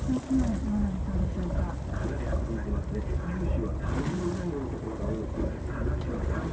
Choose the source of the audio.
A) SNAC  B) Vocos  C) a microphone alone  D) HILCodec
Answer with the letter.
C